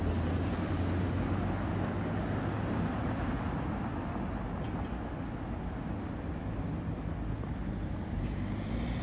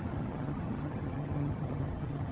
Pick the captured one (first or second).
first